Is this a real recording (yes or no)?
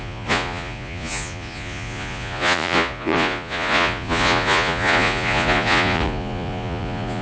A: no